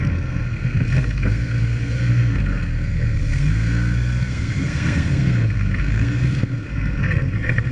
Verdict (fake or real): fake